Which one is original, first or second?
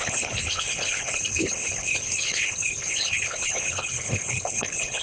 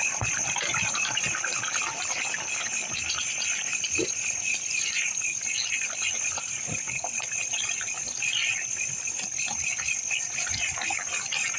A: second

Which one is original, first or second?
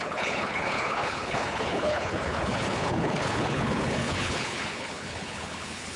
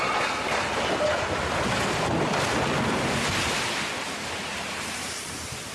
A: second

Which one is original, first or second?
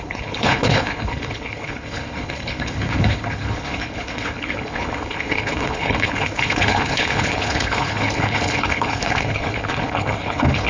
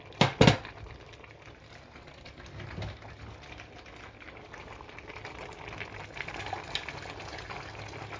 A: second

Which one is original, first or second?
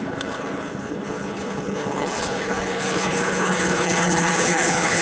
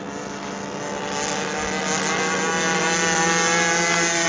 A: second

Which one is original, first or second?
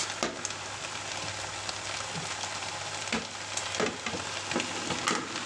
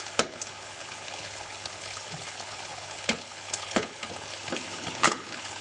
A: first